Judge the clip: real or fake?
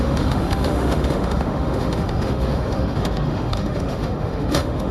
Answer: fake